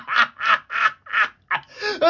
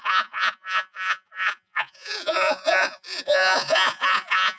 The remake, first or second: second